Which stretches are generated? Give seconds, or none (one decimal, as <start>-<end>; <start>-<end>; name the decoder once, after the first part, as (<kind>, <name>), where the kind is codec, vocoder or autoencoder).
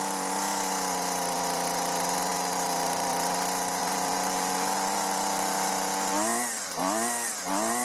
2.3-3.1 (vocoder, BigVGAN v2); 3.8-5.7